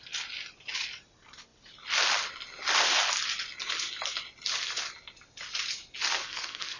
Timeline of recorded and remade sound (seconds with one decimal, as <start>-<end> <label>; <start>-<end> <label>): 0.0-6.2 recorded; 6.2-6.8 remade